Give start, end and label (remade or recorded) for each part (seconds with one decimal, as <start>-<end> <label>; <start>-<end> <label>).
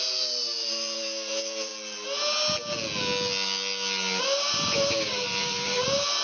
0.0-1.7 remade; 1.7-4.2 recorded; 4.2-6.2 remade